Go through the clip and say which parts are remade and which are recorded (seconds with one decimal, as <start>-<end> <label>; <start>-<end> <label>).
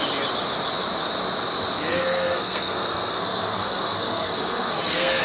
0.0-1.9 recorded; 1.9-5.2 remade